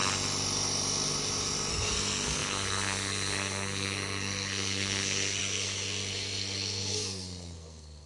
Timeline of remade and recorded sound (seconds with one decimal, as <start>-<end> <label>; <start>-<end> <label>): 0.0-1.7 recorded; 1.7-8.1 remade